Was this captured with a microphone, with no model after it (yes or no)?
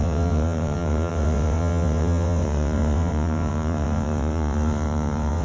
no